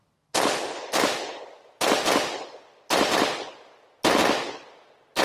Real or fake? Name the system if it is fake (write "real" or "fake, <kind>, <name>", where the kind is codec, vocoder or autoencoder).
real